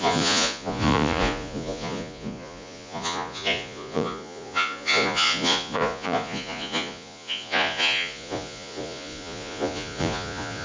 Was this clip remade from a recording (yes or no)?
yes